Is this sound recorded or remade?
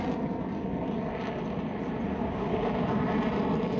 recorded